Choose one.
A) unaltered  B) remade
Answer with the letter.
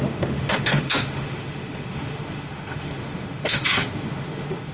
B